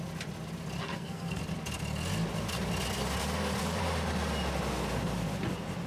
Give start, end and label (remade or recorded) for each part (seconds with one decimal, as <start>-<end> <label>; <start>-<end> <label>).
0.0-0.8 recorded; 0.8-1.4 remade; 1.4-5.9 recorded